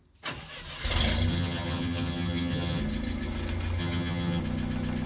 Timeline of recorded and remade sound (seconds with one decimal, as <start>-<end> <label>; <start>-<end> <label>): 0.0-1.3 recorded; 1.3-2.8 remade; 2.8-3.8 recorded; 3.8-4.4 remade; 4.4-5.1 recorded